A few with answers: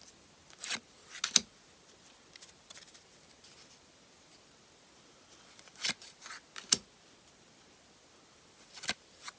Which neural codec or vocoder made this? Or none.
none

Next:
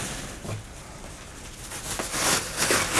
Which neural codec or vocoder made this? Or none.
none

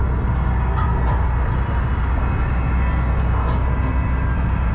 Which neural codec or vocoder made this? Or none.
none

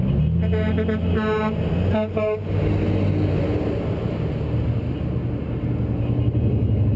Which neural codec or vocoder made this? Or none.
none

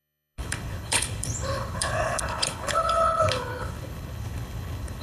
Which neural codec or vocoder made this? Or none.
codec, HILCodec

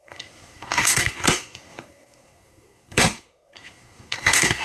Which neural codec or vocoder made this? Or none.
codec, SNAC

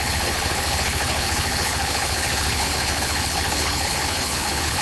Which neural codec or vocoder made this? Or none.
codec, HILCodec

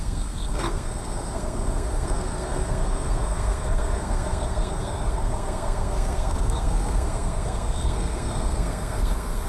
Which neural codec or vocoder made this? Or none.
codec, SNAC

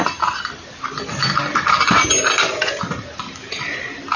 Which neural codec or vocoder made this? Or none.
none